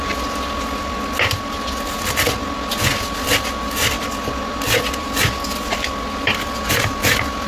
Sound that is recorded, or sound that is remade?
recorded